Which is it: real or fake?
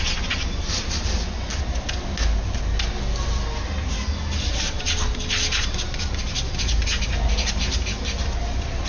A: real